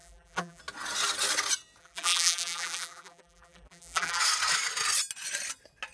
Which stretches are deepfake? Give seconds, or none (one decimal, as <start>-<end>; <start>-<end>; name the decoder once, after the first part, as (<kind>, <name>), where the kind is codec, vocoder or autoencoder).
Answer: 0.0-0.6 (vocoder, BigVGAN v2); 1.8-4.2